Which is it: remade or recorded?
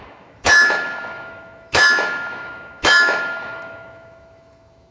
remade